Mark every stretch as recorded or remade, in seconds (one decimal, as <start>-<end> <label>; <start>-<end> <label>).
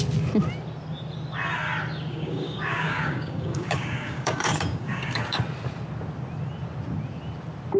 0.0-2.1 recorded; 2.1-5.4 remade; 5.4-7.8 recorded